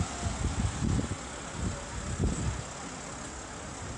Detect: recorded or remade recorded